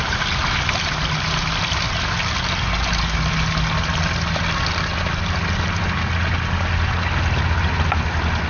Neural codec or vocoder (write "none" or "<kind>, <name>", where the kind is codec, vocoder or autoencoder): none